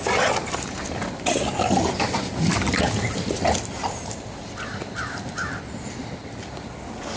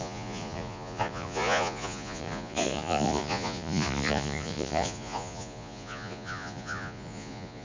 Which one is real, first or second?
first